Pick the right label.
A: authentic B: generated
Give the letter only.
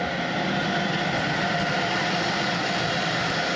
A